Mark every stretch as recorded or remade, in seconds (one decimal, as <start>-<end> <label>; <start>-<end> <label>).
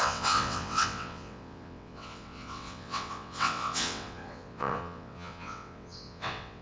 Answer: 0.0-6.6 remade